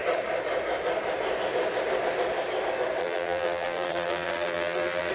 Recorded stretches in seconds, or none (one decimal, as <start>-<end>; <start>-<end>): 0.0-3.0